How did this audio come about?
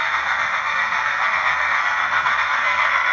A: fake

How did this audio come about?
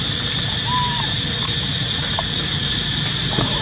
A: real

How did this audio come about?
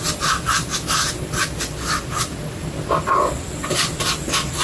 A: real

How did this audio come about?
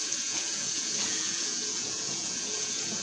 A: fake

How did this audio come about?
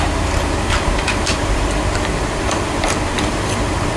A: fake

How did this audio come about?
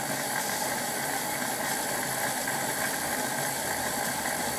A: real